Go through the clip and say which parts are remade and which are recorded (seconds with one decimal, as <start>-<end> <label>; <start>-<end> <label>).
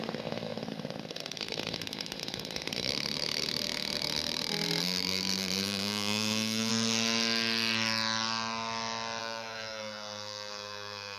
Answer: 0.0-6.7 remade; 6.7-9.2 recorded; 9.2-11.2 remade